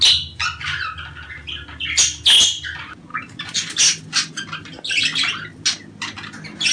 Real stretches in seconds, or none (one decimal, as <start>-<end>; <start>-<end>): 0.0-6.7